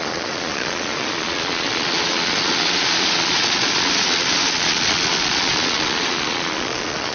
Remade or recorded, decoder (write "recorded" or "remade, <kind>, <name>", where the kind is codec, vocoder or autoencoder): remade, vocoder, Vocos